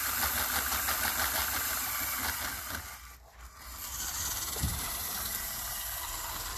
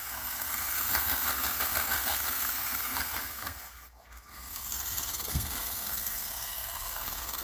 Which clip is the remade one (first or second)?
second